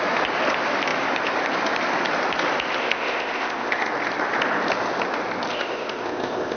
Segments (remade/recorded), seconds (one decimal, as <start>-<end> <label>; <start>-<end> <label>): 0.0-2.8 recorded; 2.8-3.9 remade; 3.9-5.5 recorded; 5.5-6.6 remade

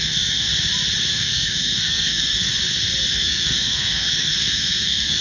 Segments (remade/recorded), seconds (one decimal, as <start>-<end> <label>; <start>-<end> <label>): 0.0-0.5 remade; 0.5-1.1 recorded; 1.1-2.5 remade; 2.5-3.1 recorded; 3.1-5.2 remade

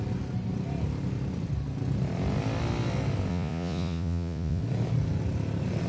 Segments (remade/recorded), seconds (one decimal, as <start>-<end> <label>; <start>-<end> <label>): 0.0-3.3 recorded; 3.3-4.6 remade; 4.6-5.9 recorded

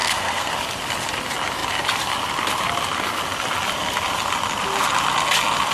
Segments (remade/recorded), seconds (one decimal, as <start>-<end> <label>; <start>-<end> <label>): 0.0-0.5 remade; 0.5-5.7 recorded

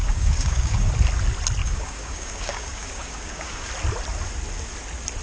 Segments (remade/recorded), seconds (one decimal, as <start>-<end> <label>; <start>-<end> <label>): 0.0-0.9 remade; 0.9-1.6 recorded; 1.6-3.7 remade; 3.7-5.2 recorded

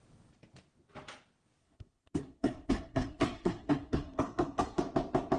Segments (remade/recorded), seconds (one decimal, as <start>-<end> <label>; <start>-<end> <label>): 0.0-1.6 recorded; 1.6-4.8 remade; 4.8-5.4 recorded